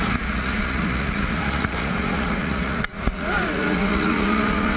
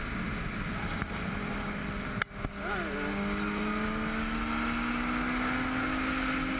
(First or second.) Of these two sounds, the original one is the second